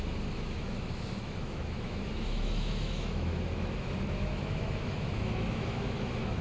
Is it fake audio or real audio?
fake